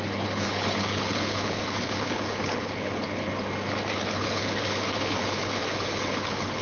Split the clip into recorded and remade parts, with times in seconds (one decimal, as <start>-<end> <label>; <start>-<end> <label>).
0.0-3.3 remade; 3.3-3.9 recorded; 3.9-6.6 remade